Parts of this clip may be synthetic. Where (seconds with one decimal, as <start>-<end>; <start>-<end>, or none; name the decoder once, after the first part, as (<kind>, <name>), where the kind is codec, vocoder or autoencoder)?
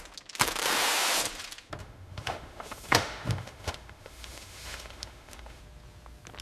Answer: 1.8-5.6 (autoencoder, DAC-VAE)